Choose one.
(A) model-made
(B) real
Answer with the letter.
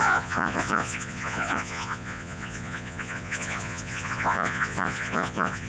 A